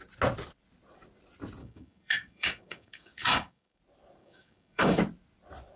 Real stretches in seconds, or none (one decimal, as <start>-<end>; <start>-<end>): 0.0-1.6; 3.8-4.2; 5.0-5.8